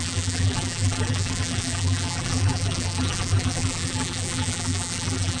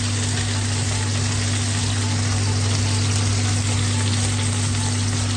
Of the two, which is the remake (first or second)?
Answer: first